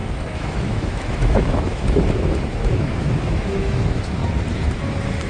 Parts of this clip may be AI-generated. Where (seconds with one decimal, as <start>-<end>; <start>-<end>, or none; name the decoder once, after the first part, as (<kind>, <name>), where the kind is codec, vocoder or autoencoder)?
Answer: 0.0-4.2 (autoencoder, DAC-VAE)